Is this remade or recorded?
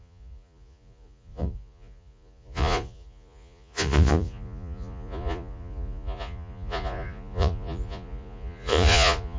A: remade